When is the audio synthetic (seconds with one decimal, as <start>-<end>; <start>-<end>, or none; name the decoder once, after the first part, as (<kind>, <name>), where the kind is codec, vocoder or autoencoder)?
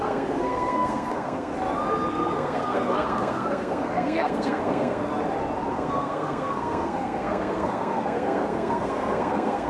0.0-1.5 (codec, SNAC); 2.1-5.1; 5.7-9.7